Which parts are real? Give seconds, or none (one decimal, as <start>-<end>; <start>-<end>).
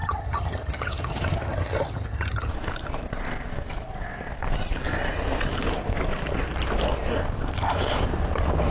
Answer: 2.5-8.7